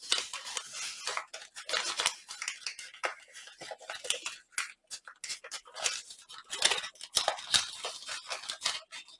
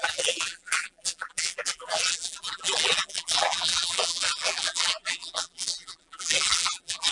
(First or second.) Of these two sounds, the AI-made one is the second